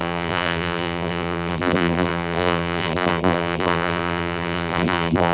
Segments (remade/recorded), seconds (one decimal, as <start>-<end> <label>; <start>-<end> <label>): 0.0-5.3 remade